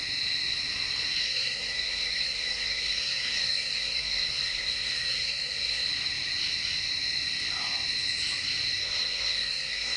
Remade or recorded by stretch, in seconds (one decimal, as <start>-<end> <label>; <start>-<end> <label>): 0.0-1.2 recorded; 1.2-5.9 remade; 5.9-8.8 recorded; 8.8-10.0 remade

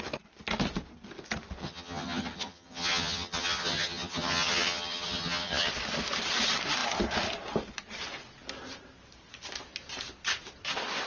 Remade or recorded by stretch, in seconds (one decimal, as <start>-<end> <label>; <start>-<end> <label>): 0.0-1.6 recorded; 1.6-5.7 remade; 5.7-11.1 recorded